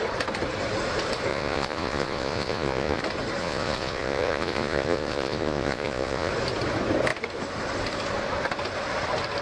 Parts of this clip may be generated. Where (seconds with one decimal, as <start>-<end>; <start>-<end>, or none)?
1.3-3.0; 3.4-6.3